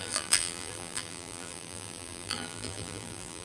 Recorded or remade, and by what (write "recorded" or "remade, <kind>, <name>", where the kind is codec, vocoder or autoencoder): remade, vocoder, BigVGAN v2